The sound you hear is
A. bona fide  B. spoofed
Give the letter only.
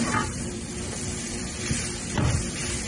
B